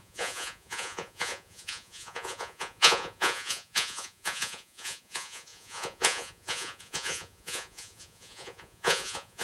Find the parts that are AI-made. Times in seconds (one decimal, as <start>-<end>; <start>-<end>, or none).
0.0-9.4